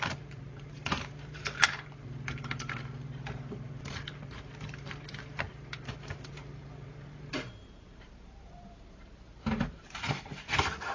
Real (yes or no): no